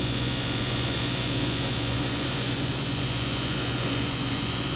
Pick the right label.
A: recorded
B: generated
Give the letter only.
B